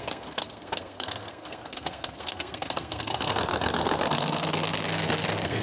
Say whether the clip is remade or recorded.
remade